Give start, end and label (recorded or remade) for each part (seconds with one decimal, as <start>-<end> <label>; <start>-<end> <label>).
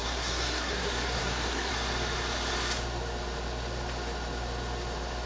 0.0-1.7 remade; 1.7-5.3 recorded